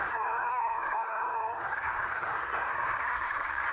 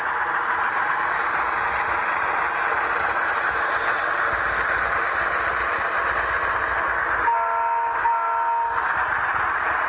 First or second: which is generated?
first